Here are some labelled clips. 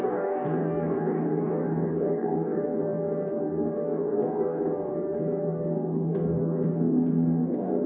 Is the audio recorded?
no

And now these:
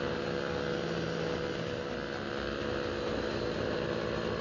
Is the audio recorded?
yes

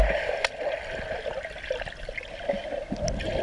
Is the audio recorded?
yes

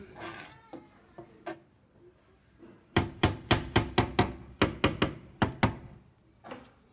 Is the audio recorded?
yes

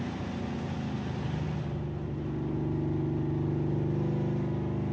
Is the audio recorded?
yes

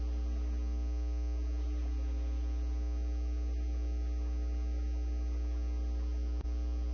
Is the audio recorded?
yes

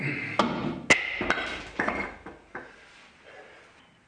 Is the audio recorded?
yes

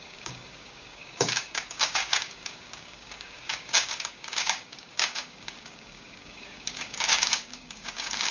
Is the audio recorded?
no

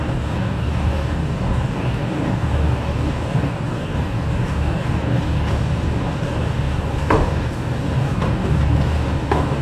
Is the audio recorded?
no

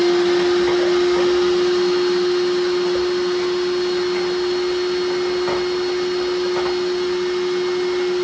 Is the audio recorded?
yes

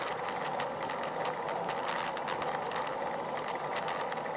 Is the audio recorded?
yes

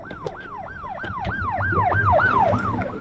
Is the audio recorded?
yes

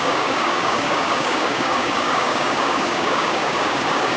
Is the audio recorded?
no